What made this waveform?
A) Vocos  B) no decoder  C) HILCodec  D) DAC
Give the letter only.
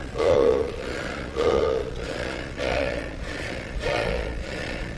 A